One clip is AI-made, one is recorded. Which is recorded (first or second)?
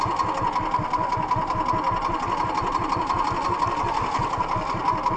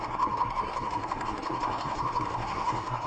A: first